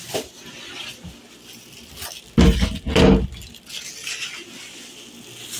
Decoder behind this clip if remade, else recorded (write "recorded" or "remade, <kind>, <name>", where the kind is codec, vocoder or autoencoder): recorded